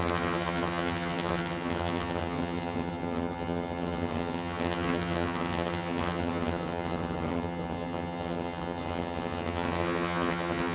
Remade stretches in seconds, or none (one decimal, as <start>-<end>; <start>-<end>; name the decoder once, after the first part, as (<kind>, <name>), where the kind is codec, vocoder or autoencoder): 0.0-10.7 (vocoder, HiFi-GAN)